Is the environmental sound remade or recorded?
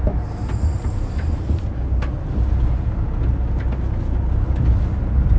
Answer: recorded